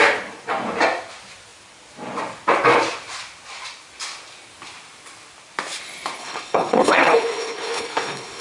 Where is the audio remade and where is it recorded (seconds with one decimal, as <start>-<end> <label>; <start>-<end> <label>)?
0.0-6.2 recorded; 6.2-8.4 remade